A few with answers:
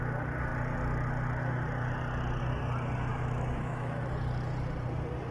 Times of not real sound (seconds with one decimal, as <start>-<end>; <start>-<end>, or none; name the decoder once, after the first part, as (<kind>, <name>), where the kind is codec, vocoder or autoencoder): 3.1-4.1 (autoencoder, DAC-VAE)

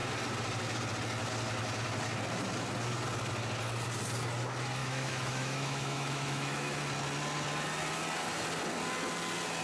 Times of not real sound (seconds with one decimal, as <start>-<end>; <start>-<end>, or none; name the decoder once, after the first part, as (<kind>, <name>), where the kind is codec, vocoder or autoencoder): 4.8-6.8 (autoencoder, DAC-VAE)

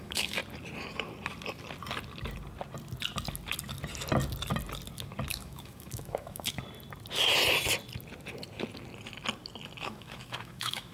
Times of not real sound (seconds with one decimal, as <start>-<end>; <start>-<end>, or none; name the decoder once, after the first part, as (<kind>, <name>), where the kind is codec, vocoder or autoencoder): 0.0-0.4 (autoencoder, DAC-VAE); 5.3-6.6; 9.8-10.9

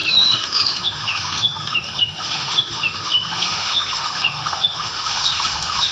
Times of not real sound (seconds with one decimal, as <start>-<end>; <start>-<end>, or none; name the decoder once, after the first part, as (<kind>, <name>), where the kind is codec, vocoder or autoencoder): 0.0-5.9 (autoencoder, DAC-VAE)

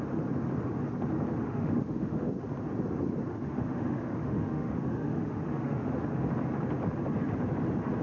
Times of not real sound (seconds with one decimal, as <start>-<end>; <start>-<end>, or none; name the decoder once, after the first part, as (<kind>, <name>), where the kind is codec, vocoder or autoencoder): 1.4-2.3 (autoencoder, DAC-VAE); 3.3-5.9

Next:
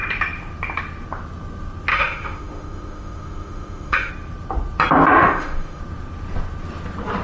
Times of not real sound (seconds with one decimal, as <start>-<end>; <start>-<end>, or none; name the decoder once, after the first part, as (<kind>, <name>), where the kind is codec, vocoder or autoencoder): 1.9-4.1 (autoencoder, DAC-VAE); 5.2-5.8

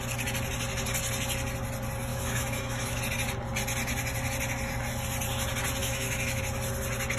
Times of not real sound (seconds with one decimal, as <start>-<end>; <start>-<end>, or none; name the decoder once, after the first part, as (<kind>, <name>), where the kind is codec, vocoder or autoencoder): 2.1-3.0 (autoencoder, DAC-VAE); 5.8-6.4

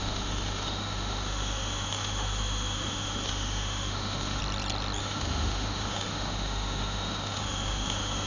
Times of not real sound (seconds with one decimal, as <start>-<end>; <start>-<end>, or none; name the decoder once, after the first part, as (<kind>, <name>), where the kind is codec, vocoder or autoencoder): 0.0-4.4 (autoencoder, DAC-VAE); 5.0-8.3